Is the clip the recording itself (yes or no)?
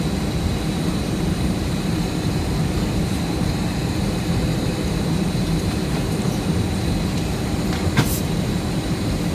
no